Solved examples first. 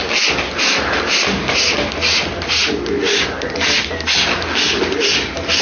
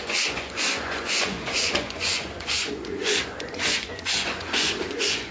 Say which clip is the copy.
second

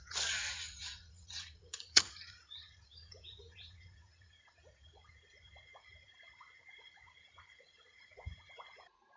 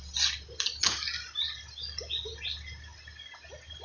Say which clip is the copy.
first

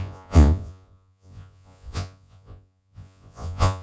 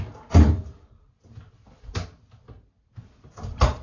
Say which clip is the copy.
first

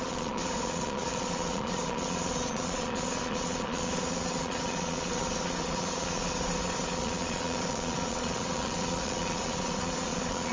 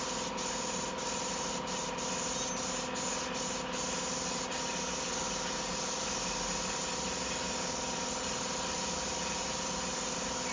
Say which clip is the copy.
first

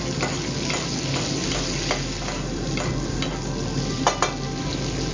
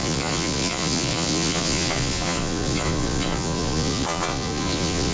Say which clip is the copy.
second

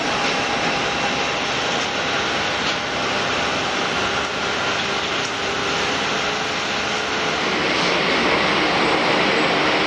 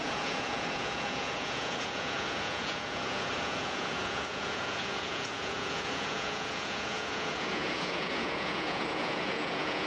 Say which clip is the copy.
second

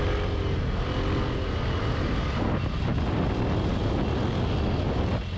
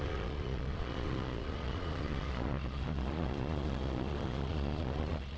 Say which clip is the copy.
second